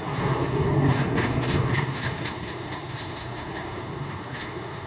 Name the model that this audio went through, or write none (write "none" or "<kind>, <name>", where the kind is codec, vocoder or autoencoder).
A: codec, SNAC